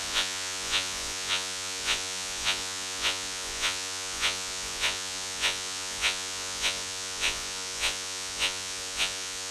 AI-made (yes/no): yes